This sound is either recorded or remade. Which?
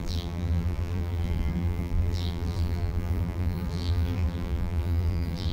remade